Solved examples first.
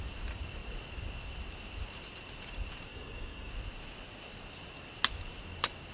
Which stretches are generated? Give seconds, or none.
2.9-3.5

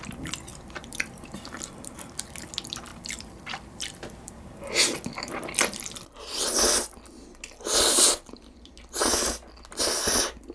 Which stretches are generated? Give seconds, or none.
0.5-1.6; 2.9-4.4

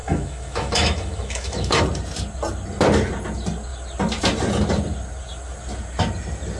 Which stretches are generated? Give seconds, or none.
0.0-1.8

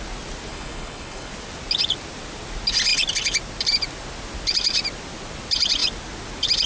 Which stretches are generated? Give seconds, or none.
0.5-1.3

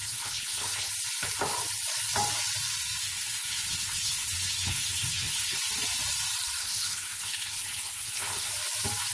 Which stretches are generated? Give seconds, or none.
0.0-0.9; 3.0-5.6; 6.6-8.5

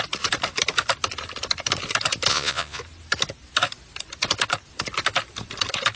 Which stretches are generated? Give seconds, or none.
2.3-2.8

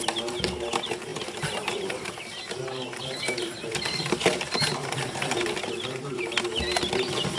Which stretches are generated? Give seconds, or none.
1.1-2.3; 3.7-6.2

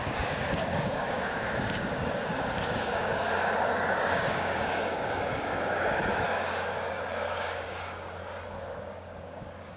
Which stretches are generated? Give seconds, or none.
0.0-8.2; 8.8-9.8